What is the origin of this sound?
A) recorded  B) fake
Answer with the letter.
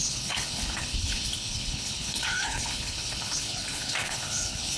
B